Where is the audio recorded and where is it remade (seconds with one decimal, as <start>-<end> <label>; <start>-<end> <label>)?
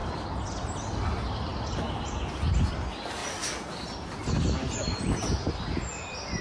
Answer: 0.0-6.4 recorded